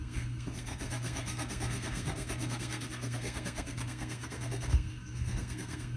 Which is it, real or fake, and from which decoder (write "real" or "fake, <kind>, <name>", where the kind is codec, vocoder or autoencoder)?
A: fake, codec, SNAC